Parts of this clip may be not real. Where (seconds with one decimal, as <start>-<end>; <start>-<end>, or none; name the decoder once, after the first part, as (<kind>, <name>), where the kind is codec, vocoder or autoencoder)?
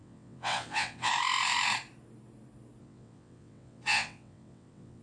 0.0-1.1 (vocoder, WaveNeXt); 2.8-5.0